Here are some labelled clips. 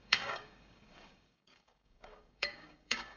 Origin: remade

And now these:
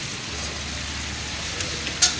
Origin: recorded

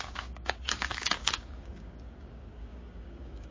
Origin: remade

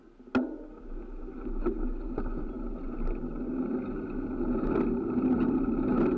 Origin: recorded